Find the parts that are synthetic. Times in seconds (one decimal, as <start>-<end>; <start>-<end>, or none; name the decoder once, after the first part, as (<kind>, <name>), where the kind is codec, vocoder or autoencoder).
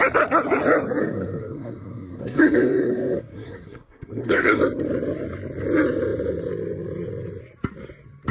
1.0-4.6 (codec, SNAC)